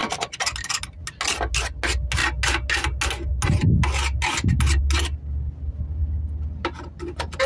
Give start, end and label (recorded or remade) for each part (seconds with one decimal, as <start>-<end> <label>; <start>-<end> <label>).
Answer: 0.0-7.5 recorded